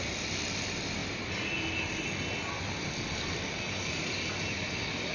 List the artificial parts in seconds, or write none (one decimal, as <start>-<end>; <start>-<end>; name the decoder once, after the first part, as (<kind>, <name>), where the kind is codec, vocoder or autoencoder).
none